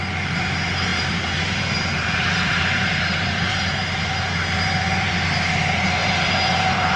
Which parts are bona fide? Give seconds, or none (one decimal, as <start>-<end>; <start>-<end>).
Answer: 0.0-0.9; 5.1-6.0